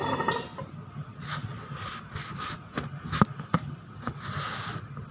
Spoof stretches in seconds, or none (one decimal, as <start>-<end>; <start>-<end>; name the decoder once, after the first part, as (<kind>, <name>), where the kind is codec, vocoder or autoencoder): none